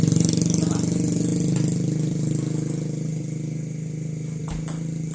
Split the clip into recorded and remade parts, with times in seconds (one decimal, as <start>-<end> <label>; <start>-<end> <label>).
0.0-5.1 recorded